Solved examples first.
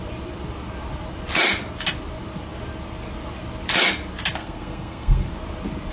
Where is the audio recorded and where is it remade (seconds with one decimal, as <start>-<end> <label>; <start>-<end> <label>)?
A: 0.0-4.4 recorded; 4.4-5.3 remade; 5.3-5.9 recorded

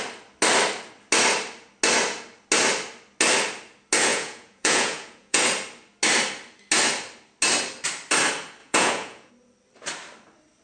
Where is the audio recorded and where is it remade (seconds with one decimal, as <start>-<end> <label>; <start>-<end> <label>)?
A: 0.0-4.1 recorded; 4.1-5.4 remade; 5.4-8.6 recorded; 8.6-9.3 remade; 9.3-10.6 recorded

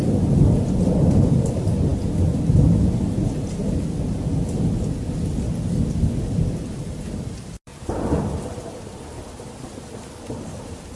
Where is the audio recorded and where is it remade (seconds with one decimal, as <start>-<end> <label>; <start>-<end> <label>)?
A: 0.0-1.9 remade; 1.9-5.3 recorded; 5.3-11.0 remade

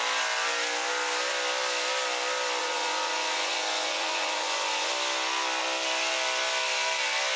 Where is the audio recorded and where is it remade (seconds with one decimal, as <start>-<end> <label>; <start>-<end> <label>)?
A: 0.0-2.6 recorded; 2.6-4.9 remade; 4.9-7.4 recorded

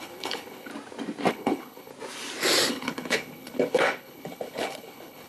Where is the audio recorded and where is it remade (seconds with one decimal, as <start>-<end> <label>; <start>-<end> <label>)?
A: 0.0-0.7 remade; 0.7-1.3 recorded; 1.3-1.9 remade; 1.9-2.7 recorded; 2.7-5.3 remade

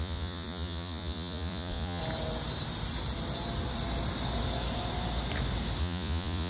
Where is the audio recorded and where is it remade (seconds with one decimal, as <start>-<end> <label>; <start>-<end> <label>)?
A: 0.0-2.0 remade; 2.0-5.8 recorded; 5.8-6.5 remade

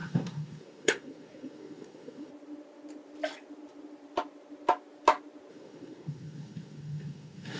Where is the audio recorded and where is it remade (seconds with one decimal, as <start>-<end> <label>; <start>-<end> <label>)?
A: 0.0-2.3 remade; 2.3-5.5 recorded; 5.5-7.6 remade